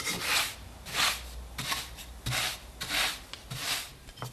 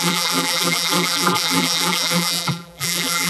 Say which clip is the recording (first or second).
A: first